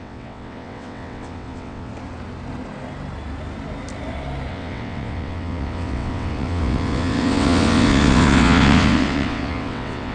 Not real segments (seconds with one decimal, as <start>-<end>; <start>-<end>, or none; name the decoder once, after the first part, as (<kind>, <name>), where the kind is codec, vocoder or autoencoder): 0.0-1.9 (vocoder, WaveNeXt); 4.5-10.1